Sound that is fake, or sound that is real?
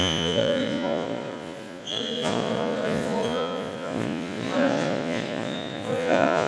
fake